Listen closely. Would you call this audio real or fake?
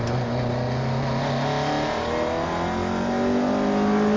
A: real